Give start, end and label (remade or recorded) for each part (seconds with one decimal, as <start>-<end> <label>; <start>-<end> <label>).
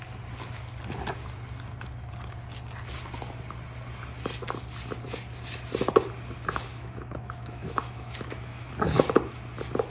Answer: 0.0-6.7 recorded; 6.7-8.7 remade; 8.7-9.9 recorded